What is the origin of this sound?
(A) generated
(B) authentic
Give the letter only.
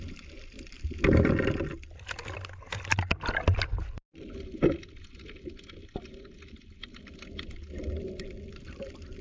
B